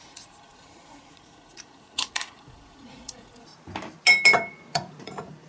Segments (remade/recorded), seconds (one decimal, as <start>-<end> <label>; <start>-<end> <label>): 0.0-3.5 remade; 3.5-4.5 recorded; 4.5-5.5 remade